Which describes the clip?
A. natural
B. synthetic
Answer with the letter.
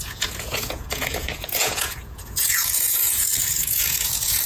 B